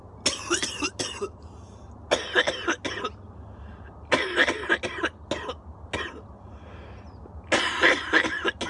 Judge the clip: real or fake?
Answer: real